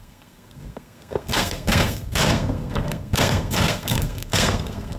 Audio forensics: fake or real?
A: fake